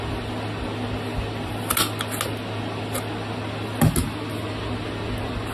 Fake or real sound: real